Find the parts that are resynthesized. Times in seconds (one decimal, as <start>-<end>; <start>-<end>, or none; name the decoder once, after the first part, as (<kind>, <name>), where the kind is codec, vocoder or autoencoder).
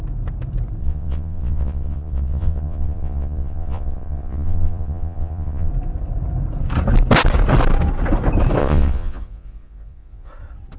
0.8-5.7 (vocoder, Vocos); 8.6-10.3